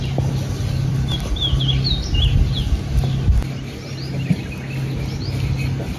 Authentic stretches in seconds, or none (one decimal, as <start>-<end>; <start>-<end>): 0.0-6.0